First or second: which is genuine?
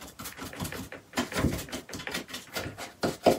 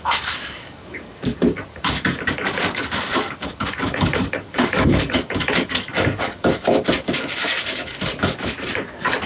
first